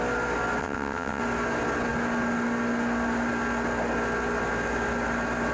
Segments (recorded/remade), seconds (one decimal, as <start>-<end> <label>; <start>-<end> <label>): 0.0-0.6 recorded; 0.6-1.2 remade; 1.2-5.5 recorded